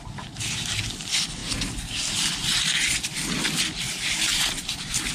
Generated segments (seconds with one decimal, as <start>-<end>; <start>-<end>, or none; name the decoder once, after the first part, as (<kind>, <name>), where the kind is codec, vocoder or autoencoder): none